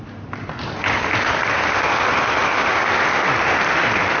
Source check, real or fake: real